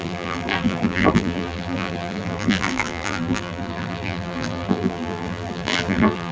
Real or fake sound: fake